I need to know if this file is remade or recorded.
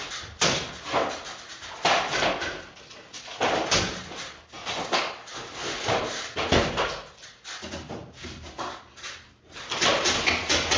recorded